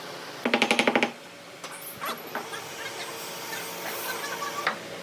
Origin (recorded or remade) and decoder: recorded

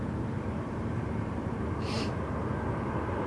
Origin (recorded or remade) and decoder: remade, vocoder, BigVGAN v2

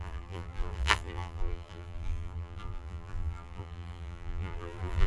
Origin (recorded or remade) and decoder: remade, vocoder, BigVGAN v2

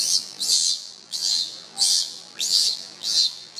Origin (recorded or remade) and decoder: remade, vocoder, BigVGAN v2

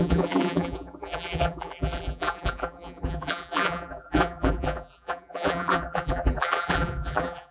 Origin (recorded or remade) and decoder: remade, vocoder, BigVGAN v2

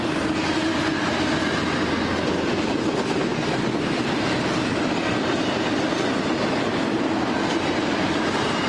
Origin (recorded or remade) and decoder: recorded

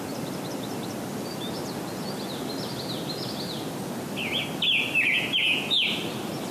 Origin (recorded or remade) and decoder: recorded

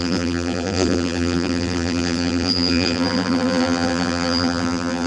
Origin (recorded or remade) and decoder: remade, vocoder, BigVGAN v2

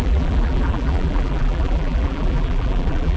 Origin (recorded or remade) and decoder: remade, vocoder, BigVGAN v2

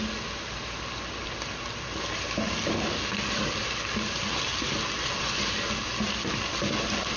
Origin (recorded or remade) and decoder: remade, vocoder, BigVGAN v2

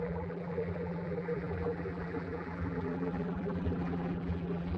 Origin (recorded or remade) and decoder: remade, vocoder, BigVGAN v2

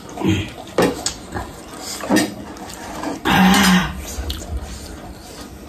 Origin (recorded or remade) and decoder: recorded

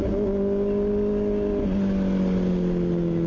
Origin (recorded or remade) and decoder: recorded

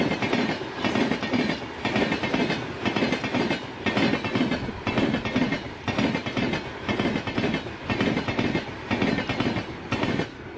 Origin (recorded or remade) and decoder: recorded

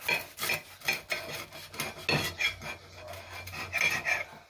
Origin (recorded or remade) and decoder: recorded